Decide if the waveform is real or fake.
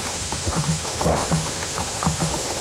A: fake